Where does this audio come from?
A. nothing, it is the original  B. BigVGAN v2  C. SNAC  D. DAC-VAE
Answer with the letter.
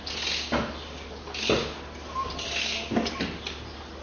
A